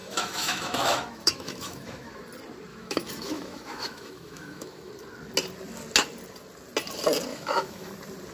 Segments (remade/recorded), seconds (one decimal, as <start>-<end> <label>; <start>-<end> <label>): 0.0-2.2 remade; 2.2-2.7 recorded; 2.7-4.9 remade; 4.9-7.3 recorded; 7.3-7.9 remade; 7.9-8.3 recorded